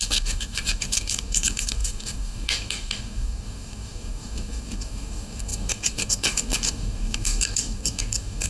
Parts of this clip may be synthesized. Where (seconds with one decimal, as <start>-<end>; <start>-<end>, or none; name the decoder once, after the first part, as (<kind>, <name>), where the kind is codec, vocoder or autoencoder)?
0.0-8.5 (codec, DAC)